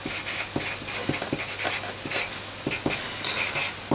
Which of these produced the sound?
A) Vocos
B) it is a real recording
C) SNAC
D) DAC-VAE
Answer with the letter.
B